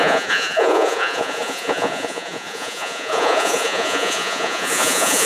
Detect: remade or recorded remade